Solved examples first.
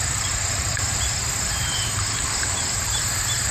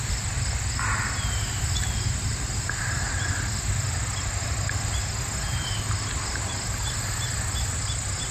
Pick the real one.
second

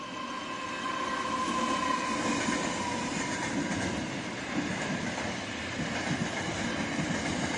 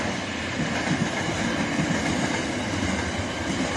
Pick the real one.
first